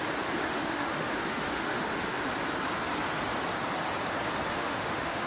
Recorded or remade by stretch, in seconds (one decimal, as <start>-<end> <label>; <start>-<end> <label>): 0.0-0.4 recorded; 0.4-2.3 remade; 2.3-4.5 recorded; 4.5-5.3 remade